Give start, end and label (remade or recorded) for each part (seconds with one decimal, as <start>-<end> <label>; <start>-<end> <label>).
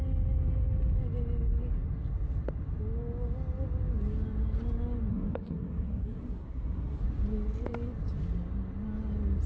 0.0-5.1 recorded; 5.1-7.0 remade; 7.0-9.5 recorded